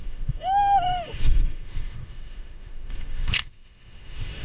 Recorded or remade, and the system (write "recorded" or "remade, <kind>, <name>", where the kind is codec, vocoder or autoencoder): remade, autoencoder, DAC-VAE